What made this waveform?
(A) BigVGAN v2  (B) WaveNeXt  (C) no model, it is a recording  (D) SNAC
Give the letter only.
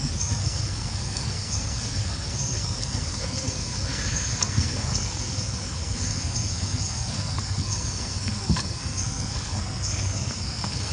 D